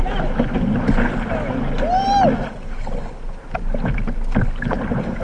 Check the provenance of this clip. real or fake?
real